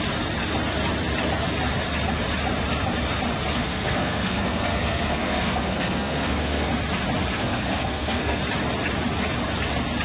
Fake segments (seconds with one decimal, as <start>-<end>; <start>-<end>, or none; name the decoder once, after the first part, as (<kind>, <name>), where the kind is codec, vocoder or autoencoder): 3.5-6.7 (codec, SNAC); 7.3-8.4